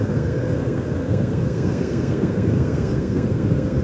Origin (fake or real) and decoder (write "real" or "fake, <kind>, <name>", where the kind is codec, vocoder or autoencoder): fake, codec, SNAC